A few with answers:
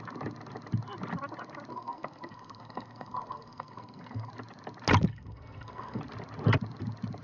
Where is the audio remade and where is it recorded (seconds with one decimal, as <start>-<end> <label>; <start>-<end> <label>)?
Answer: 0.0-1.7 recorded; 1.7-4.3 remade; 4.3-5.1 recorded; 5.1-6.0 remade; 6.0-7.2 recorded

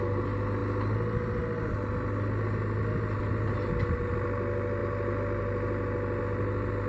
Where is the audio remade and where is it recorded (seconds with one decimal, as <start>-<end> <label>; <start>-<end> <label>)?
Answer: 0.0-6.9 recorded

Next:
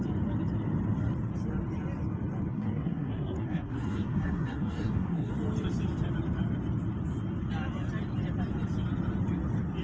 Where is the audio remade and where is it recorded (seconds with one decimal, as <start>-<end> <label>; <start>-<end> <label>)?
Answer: 0.0-2.5 recorded; 2.5-5.3 remade; 5.3-9.8 recorded

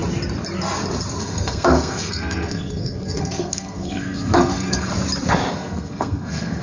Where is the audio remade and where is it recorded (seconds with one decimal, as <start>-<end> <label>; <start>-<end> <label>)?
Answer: 0.0-1.2 recorded; 1.2-4.9 remade; 4.9-5.5 recorded; 5.5-6.6 remade

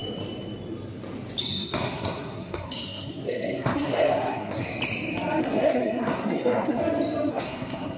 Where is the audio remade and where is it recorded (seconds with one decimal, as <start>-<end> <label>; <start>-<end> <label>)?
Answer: 0.0-1.4 recorded; 1.4-4.7 remade; 4.7-5.4 recorded; 5.4-6.8 remade; 6.8-7.3 recorded; 7.3-8.0 remade

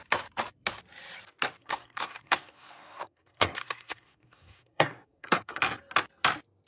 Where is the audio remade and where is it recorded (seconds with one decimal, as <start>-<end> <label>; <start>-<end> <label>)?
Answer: 0.0-1.6 recorded; 1.6-5.6 remade; 5.6-6.7 recorded